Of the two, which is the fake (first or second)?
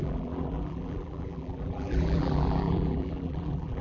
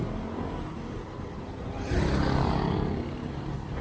first